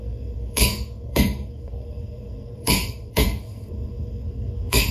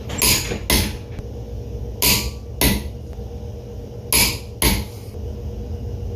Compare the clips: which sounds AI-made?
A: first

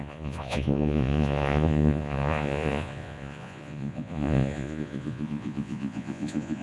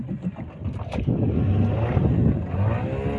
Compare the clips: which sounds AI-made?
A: first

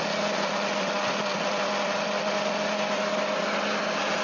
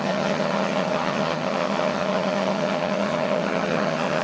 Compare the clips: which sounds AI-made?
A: second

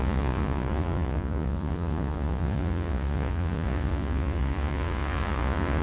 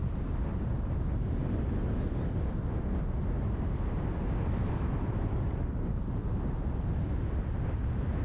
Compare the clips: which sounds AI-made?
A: first